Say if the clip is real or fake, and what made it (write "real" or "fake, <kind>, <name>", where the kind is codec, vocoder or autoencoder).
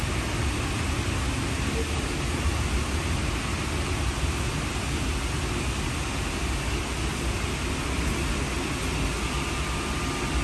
real